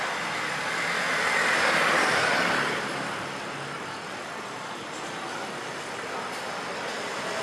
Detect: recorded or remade recorded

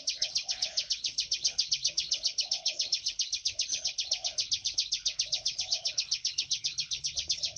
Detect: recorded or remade remade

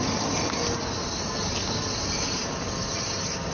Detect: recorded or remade recorded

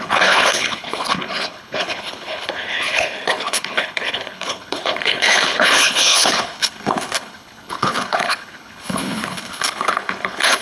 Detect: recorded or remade remade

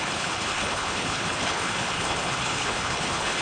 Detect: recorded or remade remade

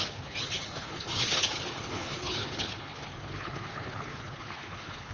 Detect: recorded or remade remade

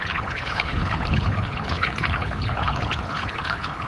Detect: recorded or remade remade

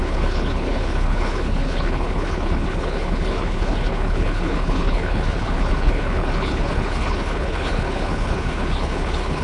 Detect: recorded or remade remade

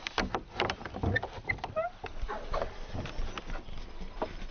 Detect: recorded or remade recorded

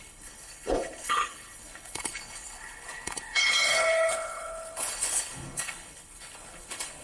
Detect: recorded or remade remade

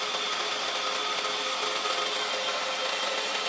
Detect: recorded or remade recorded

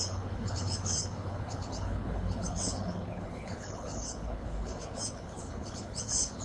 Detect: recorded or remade remade